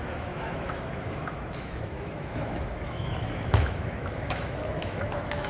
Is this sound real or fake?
fake